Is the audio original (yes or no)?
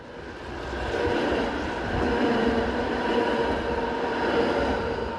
yes